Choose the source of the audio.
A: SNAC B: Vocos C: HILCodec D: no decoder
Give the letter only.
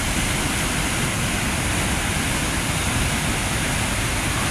D